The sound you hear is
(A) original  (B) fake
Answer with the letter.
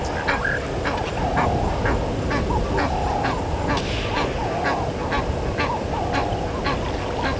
A